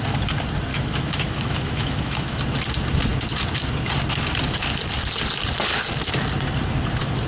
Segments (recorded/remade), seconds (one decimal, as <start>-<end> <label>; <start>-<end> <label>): 0.0-0.7 recorded; 0.7-2.4 remade; 2.4-7.3 recorded